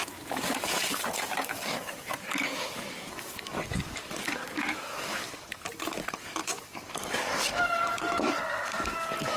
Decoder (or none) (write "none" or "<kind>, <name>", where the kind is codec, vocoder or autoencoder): codec, DAC